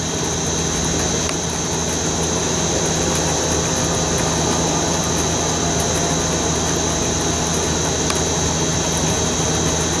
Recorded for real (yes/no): yes